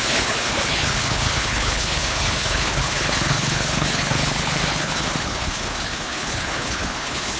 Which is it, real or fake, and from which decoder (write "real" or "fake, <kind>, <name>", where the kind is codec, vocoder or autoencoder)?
fake, codec, HILCodec